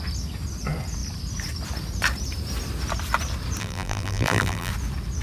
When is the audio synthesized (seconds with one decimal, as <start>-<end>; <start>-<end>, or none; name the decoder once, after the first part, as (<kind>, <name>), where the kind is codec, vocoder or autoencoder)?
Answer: 3.6-4.7 (vocoder, BigVGAN v2)

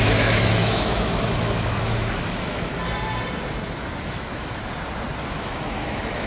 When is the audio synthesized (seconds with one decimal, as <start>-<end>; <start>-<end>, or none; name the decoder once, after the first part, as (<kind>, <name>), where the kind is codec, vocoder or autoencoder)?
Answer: 0.0-2.7 (autoencoder, DAC-VAE); 4.0-4.6; 5.3-6.3